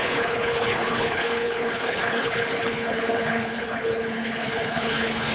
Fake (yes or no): yes